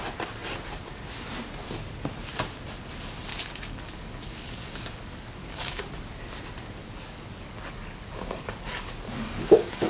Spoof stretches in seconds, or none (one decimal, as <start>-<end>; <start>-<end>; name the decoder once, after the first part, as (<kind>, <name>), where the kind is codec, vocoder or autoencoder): 3.3-5.8 (codec, DAC); 6.8-9.9